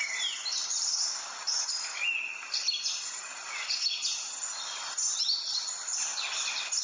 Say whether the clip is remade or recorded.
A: recorded